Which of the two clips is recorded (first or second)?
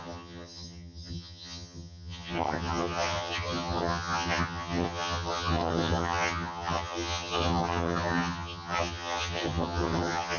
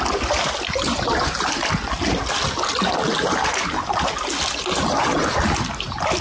second